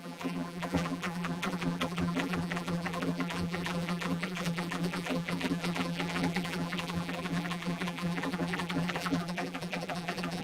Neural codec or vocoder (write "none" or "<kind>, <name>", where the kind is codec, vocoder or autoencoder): vocoder, BigVGAN v2